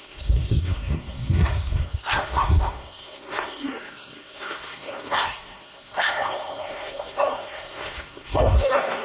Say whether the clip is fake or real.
fake